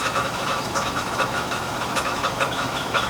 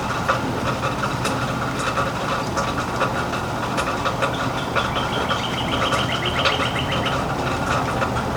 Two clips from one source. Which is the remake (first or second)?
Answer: first